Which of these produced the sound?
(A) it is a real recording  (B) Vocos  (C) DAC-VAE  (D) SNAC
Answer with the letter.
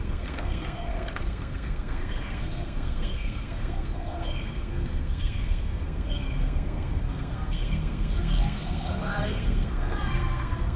D